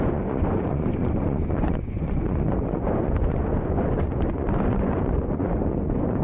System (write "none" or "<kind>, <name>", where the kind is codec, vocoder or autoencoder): vocoder, Vocos